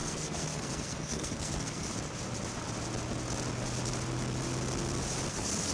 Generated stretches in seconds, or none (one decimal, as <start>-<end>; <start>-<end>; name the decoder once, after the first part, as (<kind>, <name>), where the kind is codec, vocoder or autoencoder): 0.0-1.9 (codec, SNAC); 5.3-5.7